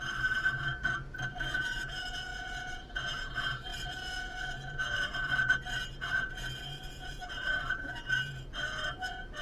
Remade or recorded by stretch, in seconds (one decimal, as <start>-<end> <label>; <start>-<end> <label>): 0.0-9.4 remade